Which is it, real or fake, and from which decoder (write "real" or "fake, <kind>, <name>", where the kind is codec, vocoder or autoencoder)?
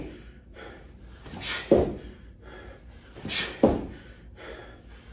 real